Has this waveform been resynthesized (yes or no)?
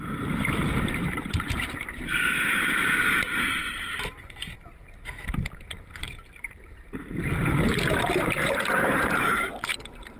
yes